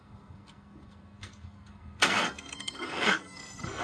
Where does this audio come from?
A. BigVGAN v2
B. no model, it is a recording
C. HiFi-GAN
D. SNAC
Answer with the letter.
D